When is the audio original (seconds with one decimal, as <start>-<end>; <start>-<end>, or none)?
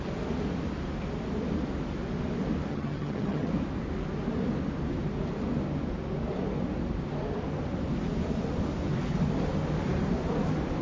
0.0-2.7; 3.5-10.8